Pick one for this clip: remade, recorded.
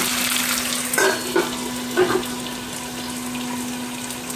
recorded